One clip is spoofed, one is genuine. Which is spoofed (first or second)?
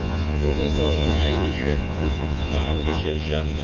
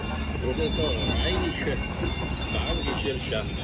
first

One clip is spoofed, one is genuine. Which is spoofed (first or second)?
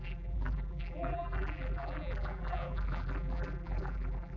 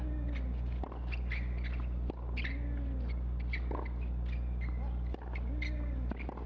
first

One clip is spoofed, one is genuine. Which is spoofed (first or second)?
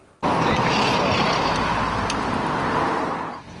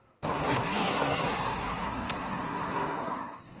second